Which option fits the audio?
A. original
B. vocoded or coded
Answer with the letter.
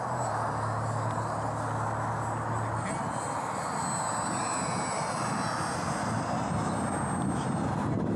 A